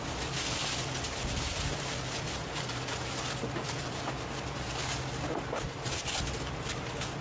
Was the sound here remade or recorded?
recorded